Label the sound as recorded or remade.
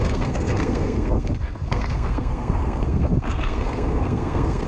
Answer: remade